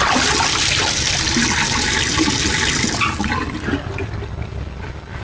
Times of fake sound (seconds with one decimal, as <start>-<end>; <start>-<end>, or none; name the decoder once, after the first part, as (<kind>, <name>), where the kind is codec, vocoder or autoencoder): none